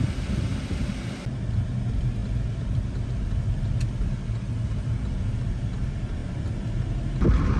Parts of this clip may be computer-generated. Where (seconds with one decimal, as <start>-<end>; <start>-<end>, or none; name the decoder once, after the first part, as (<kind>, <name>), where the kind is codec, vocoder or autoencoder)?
none